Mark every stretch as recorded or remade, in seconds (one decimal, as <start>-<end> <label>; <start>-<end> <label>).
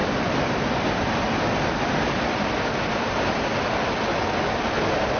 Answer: 0.0-5.2 recorded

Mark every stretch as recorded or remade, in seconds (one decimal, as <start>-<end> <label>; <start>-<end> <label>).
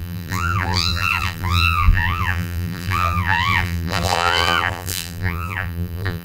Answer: 0.0-6.2 remade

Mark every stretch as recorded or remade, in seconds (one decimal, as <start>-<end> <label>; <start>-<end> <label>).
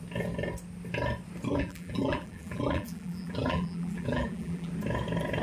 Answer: 0.0-1.5 recorded; 1.5-4.7 remade; 4.7-5.4 recorded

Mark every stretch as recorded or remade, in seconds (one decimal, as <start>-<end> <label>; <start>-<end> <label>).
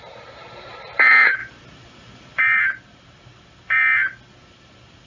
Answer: 0.0-3.8 remade; 3.8-5.1 recorded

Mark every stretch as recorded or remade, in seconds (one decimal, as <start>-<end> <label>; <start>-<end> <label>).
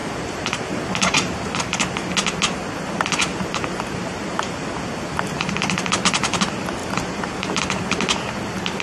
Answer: 0.0-1.6 remade; 1.6-3.3 recorded; 3.3-5.6 remade; 5.6-6.8 recorded; 6.8-7.6 remade; 7.6-8.8 recorded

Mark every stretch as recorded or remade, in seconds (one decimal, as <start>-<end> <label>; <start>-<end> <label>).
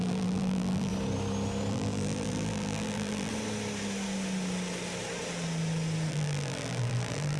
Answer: 0.0-0.9 remade; 0.9-1.7 recorded; 1.7-3.3 remade; 3.3-6.1 recorded; 6.1-7.4 remade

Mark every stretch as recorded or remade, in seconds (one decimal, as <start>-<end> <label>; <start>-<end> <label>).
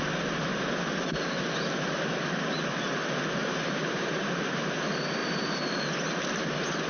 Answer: 0.0-3.4 recorded; 3.4-4.6 remade; 4.6-6.9 recorded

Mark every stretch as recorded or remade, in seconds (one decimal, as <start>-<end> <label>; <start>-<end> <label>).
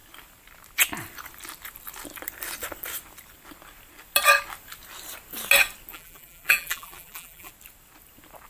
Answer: 0.0-5.9 recorded; 5.9-7.5 remade; 7.5-8.5 recorded